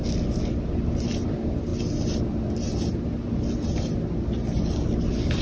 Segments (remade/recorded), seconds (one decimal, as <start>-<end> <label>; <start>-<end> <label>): 0.0-5.4 recorded